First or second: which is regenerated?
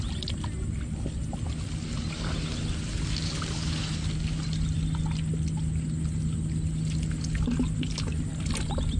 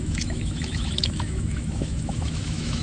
second